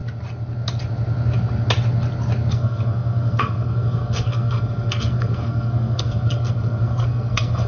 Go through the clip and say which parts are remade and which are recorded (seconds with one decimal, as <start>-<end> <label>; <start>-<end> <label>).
0.0-2.5 recorded; 2.5-7.7 remade